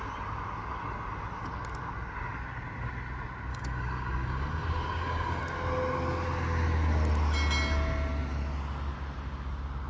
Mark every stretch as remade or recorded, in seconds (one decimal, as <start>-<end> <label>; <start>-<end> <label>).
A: 0.0-3.5 recorded; 3.5-5.4 remade; 5.4-9.9 recorded